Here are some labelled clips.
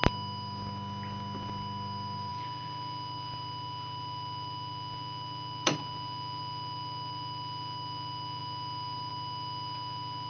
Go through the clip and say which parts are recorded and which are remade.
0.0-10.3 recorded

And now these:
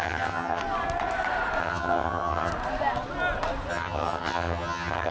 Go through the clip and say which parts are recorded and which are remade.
0.0-0.6 remade; 0.6-1.6 recorded; 1.6-2.5 remade; 2.5-3.7 recorded; 3.7-5.1 remade

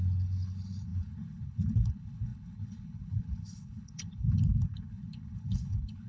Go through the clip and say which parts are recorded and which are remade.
0.0-6.1 remade